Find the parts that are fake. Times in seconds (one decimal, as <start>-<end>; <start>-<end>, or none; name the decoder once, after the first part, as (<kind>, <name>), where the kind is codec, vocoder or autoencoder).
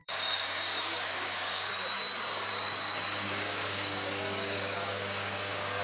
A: 0.0-1.7 (codec, DAC); 2.5-5.8